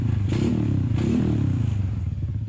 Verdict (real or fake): real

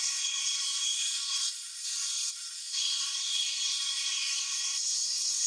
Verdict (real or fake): fake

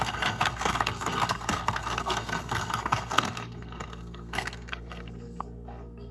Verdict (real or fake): fake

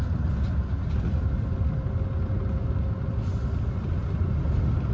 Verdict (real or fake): real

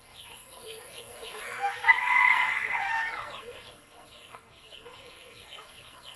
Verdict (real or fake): fake